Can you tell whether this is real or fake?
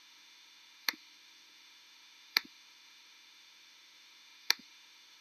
fake